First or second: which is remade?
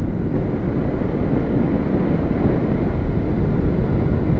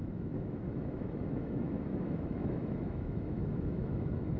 second